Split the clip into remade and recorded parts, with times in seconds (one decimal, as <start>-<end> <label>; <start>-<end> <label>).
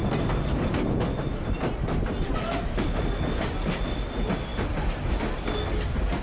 0.0-6.2 recorded